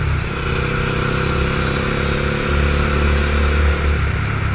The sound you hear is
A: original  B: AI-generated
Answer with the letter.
A